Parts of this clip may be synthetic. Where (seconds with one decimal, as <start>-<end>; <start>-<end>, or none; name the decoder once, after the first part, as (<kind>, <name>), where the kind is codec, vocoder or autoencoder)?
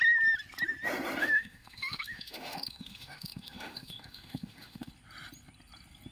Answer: 1.2-4.9 (autoencoder, DAC-VAE)